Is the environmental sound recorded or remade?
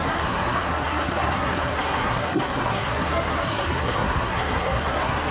remade